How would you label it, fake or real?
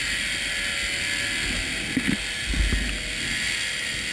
real